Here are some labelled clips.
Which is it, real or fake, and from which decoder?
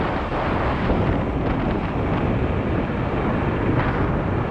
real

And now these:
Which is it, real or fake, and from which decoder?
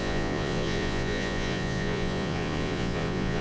fake, vocoder, Vocos